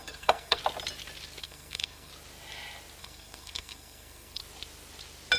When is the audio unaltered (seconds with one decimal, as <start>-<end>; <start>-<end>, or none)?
0.6-1.4; 2.1-3.0; 4.4-5.4

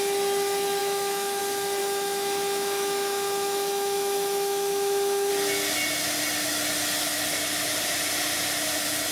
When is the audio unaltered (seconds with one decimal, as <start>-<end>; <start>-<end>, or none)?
0.0-0.8; 1.4-1.8; 5.3-9.1

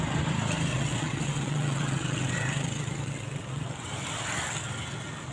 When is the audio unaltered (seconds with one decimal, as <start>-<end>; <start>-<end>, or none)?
0.0-0.7; 3.9-5.3

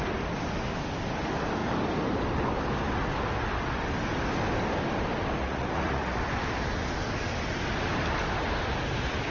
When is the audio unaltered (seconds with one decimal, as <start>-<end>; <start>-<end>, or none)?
0.0-5.4; 6.2-9.3

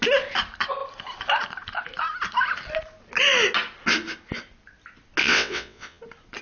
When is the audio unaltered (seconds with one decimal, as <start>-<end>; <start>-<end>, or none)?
0.0-5.2; 6.0-6.4

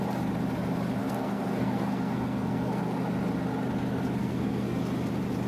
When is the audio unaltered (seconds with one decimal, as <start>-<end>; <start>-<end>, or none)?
0.0-1.0; 2.8-4.2; 4.8-5.5

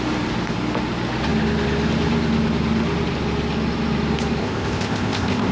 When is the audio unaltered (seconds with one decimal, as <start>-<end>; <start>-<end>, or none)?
0.0-4.4

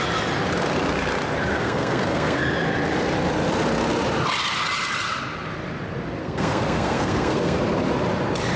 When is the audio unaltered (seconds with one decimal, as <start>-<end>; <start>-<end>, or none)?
0.0-1.5; 2.4-6.2; 7.6-8.6